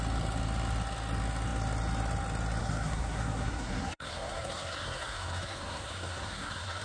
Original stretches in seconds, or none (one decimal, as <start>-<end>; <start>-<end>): 0.0-2.6